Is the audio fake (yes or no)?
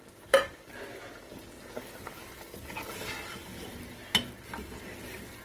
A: no